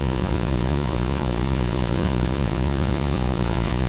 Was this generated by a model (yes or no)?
yes